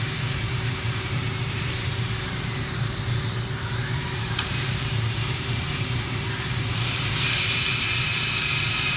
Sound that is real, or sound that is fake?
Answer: fake